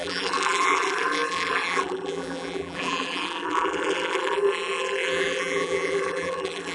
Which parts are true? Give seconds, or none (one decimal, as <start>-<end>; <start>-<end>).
none